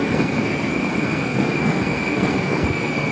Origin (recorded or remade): remade